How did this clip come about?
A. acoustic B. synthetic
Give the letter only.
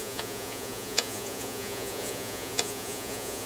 B